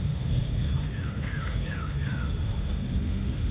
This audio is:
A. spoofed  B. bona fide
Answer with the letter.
A